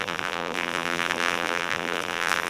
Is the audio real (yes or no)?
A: no